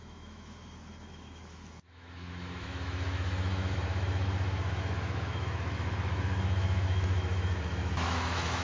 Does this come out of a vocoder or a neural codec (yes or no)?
yes